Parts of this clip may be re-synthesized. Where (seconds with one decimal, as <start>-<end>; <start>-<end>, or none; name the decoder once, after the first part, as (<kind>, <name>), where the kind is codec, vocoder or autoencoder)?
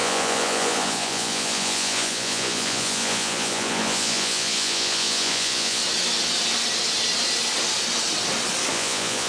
0.0-5.8 (vocoder, Vocos); 8.7-9.3